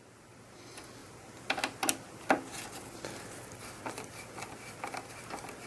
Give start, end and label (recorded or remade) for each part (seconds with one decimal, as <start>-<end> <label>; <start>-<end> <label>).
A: 0.0-5.7 recorded

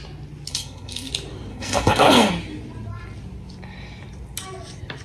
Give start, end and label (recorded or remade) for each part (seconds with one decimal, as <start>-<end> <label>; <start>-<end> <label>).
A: 0.0-0.5 recorded; 0.5-1.1 remade; 1.1-1.5 recorded; 1.5-2.3 remade; 2.3-5.0 recorded

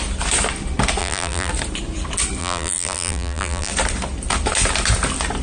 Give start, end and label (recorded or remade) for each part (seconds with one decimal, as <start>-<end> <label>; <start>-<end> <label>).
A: 0.0-1.0 recorded; 1.0-1.5 remade; 1.5-2.4 recorded; 2.4-3.7 remade; 3.7-5.4 recorded

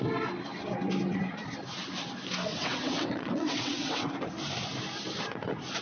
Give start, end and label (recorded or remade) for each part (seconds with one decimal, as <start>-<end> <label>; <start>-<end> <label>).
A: 0.0-2.5 recorded; 2.5-4.1 remade; 4.1-5.8 recorded

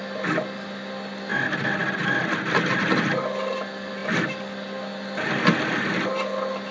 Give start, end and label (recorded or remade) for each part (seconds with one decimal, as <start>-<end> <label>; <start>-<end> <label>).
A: 0.0-6.7 recorded

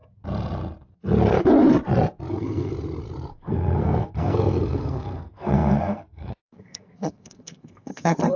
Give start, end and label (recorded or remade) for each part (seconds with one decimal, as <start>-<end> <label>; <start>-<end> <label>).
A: 0.0-2.3 recorded; 2.3-2.7 remade; 2.7-3.3 recorded; 3.3-8.4 remade

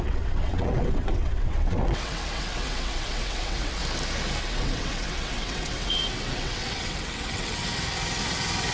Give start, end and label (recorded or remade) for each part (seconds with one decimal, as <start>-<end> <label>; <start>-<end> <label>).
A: 0.0-3.8 remade; 3.8-4.4 recorded; 4.4-7.6 remade; 7.6-8.7 recorded

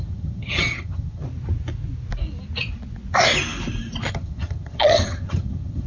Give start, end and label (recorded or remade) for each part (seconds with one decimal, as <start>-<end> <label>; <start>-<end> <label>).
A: 0.0-1.2 remade; 1.2-4.1 recorded; 4.1-5.9 remade